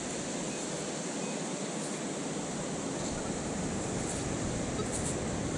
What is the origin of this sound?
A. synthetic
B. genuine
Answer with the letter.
B